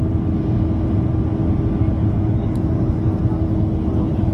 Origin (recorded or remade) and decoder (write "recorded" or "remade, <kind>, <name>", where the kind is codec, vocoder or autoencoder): recorded